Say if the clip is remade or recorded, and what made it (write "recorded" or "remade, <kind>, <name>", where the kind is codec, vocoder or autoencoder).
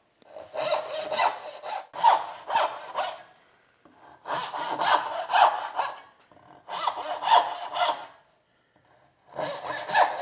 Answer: recorded